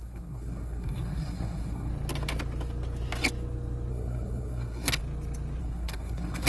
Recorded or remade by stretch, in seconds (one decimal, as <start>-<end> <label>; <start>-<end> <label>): 0.0-1.9 remade; 1.9-3.9 recorded; 3.9-5.0 remade; 5.0-5.6 recorded; 5.6-6.5 remade